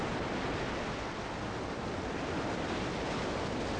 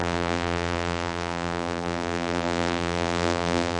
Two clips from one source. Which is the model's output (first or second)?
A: second